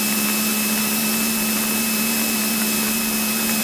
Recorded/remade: recorded